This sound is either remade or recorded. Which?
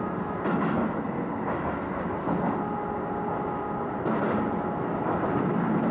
recorded